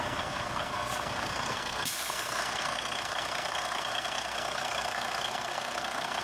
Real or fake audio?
fake